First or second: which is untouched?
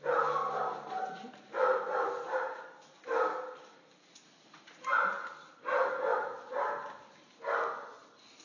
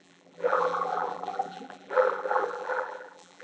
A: first